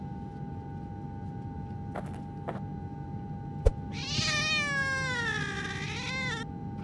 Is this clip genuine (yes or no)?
yes